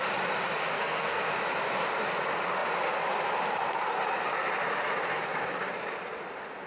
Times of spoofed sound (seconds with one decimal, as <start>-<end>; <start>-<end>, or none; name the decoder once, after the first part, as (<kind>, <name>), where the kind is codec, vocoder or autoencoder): 0.7-1.3 (codec, SNAC)